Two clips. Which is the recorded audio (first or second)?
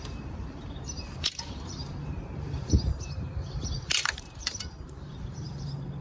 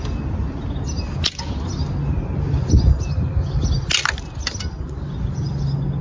second